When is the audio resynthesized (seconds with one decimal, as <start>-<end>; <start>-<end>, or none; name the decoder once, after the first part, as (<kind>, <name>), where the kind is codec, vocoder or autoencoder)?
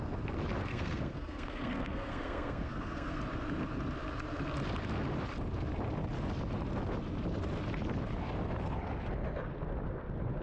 0.7-3.2 (codec, SNAC)